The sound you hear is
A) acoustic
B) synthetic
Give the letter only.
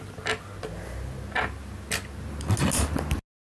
A